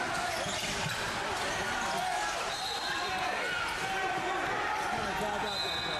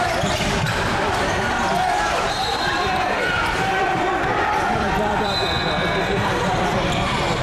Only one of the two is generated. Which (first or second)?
second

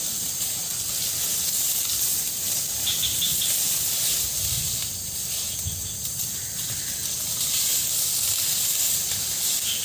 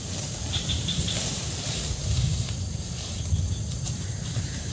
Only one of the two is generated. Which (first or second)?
second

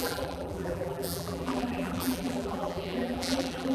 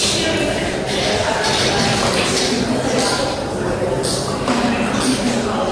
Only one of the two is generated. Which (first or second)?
first